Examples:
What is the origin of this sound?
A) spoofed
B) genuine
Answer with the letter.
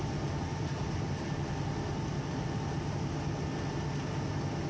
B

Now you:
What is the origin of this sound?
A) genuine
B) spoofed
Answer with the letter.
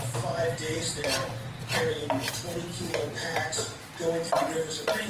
B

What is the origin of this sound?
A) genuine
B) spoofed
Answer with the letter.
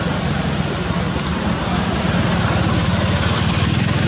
B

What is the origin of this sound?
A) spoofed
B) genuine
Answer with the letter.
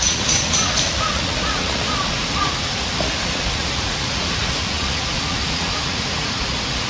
A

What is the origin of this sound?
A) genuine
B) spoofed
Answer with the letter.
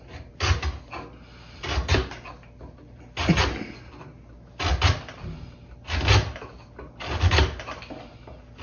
A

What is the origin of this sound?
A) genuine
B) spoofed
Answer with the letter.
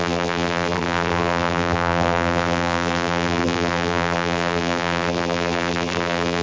B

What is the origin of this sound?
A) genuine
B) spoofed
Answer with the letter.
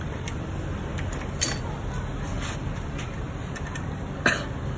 A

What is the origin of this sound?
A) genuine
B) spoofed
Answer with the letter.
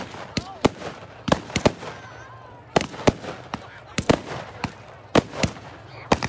B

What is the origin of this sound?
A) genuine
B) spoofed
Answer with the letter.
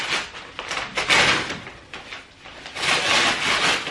A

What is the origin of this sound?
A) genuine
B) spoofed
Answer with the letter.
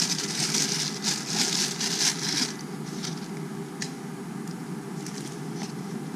A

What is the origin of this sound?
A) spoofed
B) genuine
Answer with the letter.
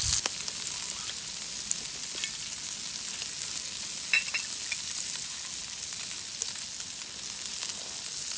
B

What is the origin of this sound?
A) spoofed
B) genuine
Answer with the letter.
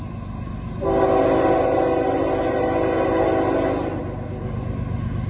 B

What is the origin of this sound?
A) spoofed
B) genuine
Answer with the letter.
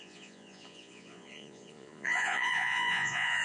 A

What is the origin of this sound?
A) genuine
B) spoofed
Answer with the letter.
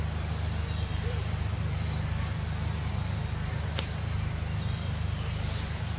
B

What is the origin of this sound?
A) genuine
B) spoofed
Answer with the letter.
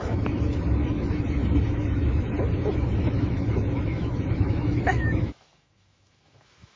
B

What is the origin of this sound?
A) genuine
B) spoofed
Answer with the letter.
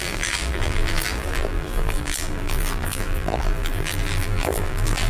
B